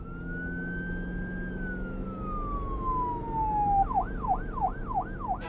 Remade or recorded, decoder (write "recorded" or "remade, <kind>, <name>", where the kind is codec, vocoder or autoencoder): recorded